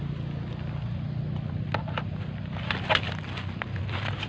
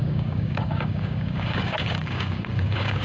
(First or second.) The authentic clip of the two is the first